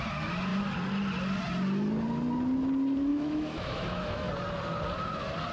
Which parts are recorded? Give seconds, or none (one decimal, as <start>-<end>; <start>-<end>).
0.0-3.1; 4.3-5.5